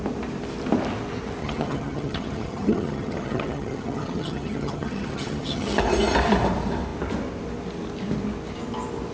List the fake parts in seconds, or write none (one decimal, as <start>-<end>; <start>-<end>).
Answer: 1.4-5.8